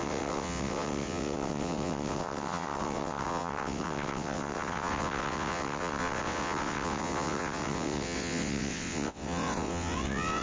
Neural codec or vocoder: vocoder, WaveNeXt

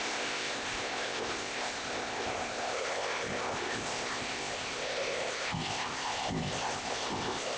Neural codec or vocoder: codec, ZipCodec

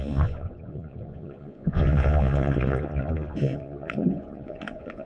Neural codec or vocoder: vocoder, Vocos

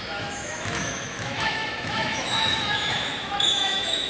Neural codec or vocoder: autoencoder, DAC-VAE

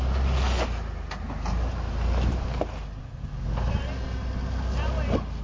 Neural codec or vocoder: none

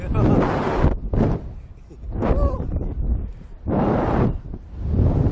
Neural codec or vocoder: none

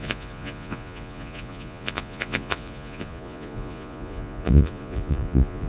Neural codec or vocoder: vocoder, Vocos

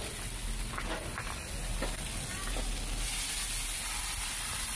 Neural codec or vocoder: none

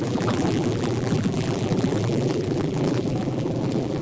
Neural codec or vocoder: vocoder, BigVGAN v2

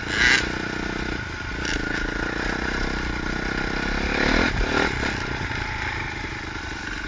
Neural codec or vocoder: none